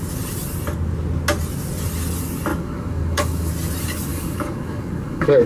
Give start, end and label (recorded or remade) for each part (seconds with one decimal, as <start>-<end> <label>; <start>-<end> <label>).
0.0-2.5 recorded; 2.5-3.5 remade; 3.5-4.1 recorded; 4.1-5.5 remade

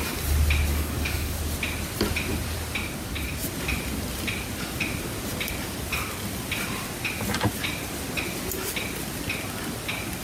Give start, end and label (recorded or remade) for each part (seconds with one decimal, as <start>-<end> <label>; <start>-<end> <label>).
0.0-0.7 recorded; 0.7-1.4 remade; 1.4-10.2 recorded

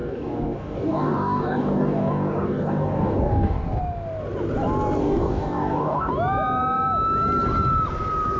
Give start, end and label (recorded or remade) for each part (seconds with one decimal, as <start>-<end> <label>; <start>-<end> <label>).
0.0-3.8 remade; 3.8-5.0 recorded; 5.0-6.1 remade; 6.1-8.4 recorded

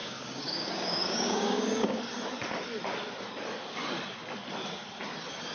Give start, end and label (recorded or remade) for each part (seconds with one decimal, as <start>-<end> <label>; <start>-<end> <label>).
0.0-2.0 remade; 2.0-5.5 recorded